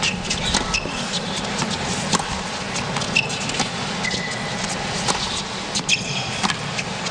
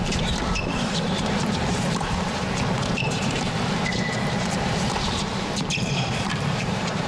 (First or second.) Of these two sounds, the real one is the first